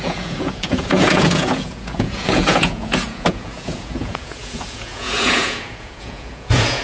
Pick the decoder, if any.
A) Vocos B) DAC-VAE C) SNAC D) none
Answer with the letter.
A